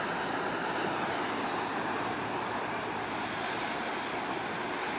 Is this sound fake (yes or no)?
no